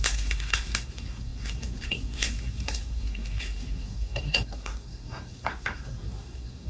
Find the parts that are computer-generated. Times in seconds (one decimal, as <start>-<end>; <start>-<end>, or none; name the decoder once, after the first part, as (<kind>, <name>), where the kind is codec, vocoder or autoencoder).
0.0-6.7 (codec, SNAC)